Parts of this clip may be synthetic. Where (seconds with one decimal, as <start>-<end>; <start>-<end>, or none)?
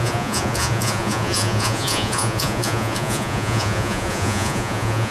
0.0-5.1